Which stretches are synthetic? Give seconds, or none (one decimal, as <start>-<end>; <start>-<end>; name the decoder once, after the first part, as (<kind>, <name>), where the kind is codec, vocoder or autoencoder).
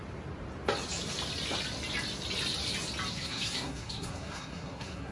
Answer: 3.1-5.1 (codec, SNAC)